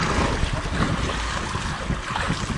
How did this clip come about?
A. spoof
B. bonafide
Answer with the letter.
B